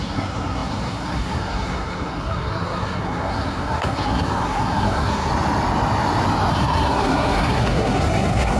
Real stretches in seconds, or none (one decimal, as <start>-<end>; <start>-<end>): 5.3-6.5

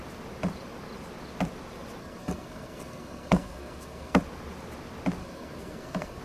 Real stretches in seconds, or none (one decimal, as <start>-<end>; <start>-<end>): 0.0-2.0; 4.2-5.2

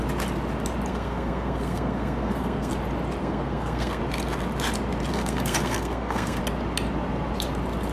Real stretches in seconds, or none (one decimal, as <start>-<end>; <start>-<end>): 0.0-0.9; 2.7-3.2; 4.0-5.1; 6.4-7.9